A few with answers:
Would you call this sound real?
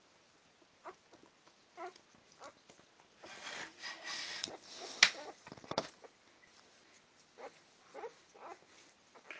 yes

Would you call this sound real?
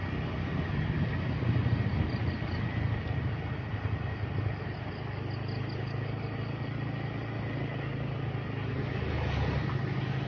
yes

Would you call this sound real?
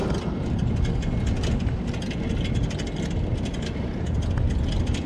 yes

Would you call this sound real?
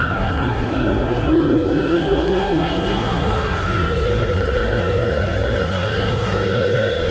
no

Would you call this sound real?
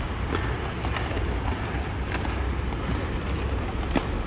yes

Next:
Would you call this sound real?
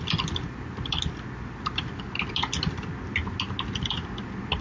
yes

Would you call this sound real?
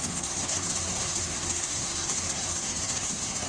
no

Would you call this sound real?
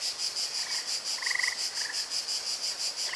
yes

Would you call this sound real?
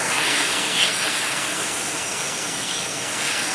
no